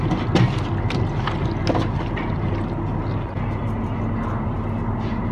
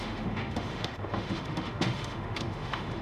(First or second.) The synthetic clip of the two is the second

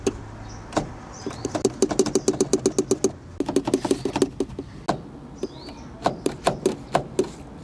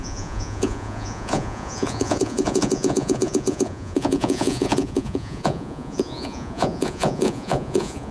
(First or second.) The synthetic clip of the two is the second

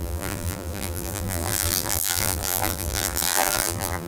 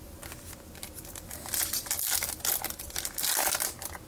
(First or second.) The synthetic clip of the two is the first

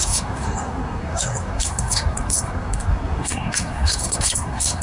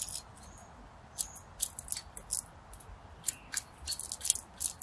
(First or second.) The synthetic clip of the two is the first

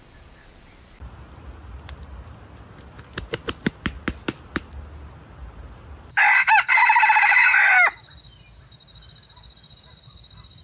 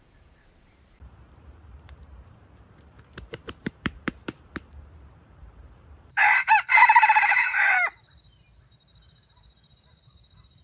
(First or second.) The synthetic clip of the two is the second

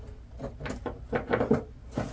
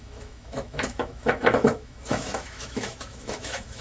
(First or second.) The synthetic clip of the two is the second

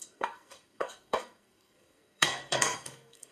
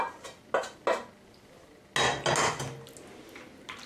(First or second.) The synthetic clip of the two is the first